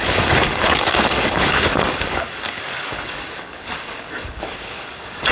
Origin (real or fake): fake